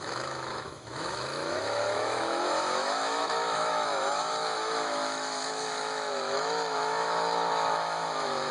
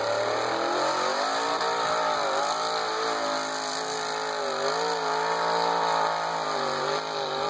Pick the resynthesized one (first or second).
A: first